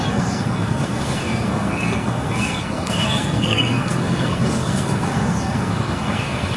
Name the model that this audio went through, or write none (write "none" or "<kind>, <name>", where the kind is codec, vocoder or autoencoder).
codec, SNAC